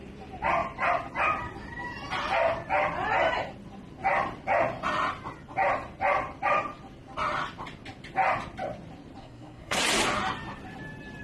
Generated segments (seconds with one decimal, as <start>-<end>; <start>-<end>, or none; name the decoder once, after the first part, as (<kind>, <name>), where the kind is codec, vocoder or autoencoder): 9.2-9.8 (codec, SNAC)